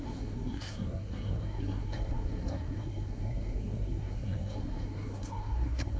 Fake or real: fake